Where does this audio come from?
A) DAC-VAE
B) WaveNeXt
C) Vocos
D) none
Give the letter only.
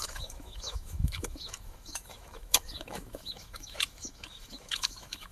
A